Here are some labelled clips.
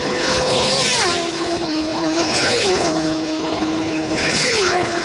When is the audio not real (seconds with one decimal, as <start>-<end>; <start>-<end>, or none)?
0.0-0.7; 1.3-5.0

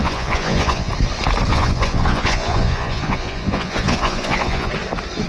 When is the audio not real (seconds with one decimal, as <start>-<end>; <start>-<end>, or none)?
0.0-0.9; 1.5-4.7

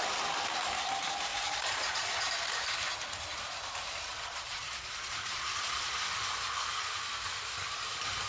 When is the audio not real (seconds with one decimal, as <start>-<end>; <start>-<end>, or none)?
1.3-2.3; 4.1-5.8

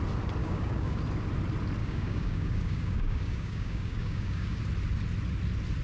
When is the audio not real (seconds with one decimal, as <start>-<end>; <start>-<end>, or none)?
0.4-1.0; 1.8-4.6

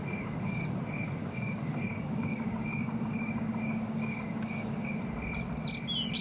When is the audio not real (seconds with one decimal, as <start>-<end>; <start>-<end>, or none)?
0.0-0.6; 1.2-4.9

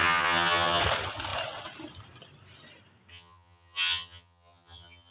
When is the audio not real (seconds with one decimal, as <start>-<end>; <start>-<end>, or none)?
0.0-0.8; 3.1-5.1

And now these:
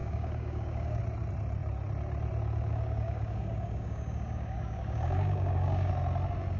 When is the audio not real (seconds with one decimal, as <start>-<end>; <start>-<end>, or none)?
0.0-1.0; 2.7-5.9

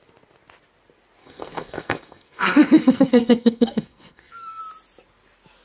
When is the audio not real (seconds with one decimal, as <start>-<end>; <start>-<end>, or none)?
1.2-4.6